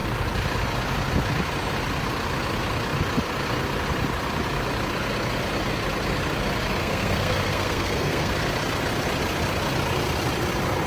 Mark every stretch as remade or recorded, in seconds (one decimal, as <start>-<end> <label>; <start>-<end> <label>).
0.0-6.8 recorded; 6.8-8.3 remade; 8.3-10.9 recorded